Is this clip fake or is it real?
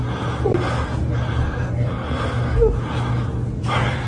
real